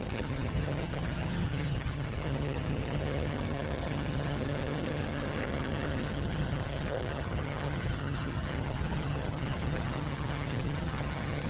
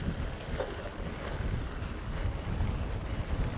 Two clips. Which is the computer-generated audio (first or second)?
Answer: first